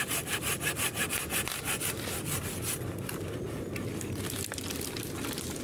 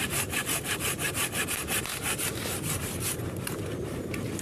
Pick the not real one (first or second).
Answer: second